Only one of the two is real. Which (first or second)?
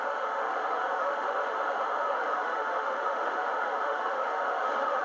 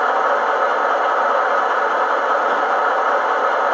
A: second